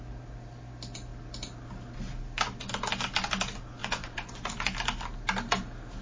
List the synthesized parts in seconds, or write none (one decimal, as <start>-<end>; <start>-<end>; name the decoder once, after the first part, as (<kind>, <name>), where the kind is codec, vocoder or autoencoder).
3.8-4.7 (vocoder, Vocos)